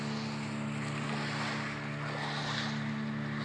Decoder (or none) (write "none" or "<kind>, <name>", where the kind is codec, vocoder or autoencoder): none